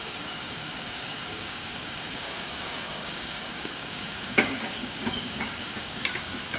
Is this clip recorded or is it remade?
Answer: remade